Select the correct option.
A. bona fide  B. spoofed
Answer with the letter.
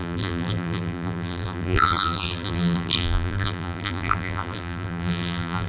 B